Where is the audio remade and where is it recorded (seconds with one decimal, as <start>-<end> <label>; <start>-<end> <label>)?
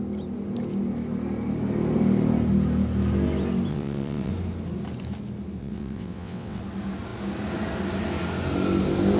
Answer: 0.0-3.7 recorded; 3.7-4.3 remade; 4.3-5.6 recorded; 5.6-6.6 remade; 6.6-9.2 recorded